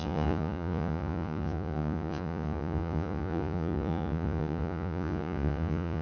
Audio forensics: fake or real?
fake